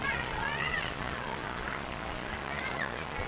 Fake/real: fake